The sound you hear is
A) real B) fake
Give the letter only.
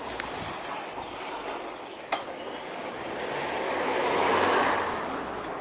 A